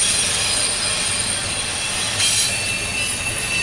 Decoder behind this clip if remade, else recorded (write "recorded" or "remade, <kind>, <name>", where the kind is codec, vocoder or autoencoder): recorded